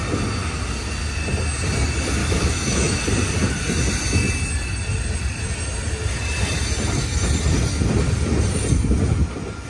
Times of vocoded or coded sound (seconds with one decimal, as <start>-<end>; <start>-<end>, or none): 2.2-3.0